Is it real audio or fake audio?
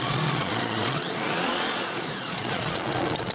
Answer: fake